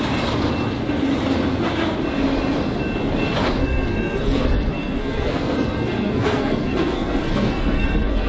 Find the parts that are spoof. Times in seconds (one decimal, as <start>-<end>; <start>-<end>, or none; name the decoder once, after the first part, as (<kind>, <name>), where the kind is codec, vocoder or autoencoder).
3.6-8.3 (codec, SNAC)